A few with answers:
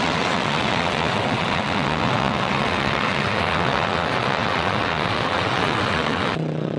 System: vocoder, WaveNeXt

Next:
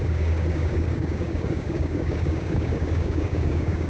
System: codec, DAC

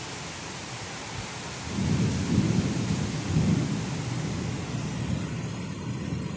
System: none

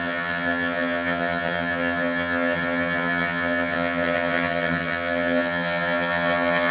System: vocoder, HiFi-GAN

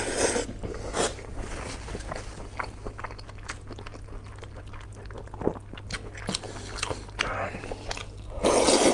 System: none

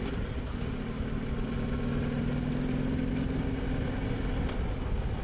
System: none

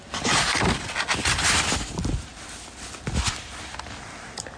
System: none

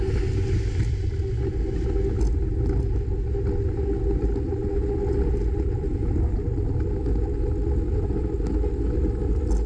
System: none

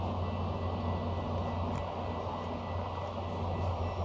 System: none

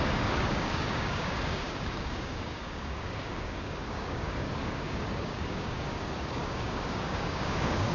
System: codec, DAC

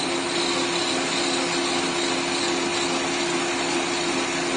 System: none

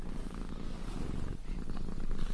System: none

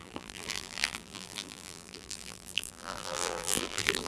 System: vocoder, BigVGAN v2